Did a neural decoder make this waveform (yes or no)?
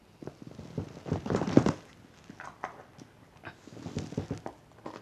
no